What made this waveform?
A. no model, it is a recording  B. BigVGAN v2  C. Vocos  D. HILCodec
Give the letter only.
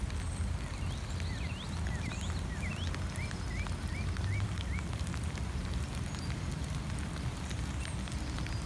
A